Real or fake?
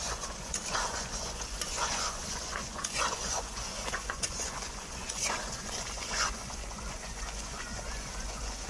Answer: fake